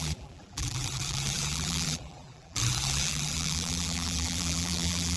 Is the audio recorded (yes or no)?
no